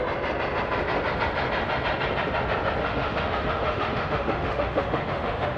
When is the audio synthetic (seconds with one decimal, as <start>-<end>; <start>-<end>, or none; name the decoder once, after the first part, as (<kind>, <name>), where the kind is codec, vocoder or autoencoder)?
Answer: 2.8-5.6 (autoencoder, DAC-VAE)